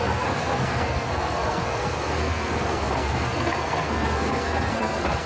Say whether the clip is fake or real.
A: fake